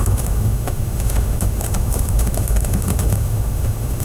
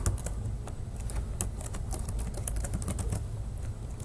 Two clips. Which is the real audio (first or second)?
second